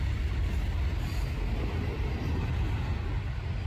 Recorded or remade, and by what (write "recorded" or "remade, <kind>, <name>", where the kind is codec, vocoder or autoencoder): recorded